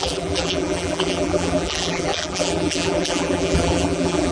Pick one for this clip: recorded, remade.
remade